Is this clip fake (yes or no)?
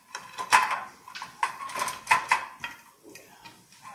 no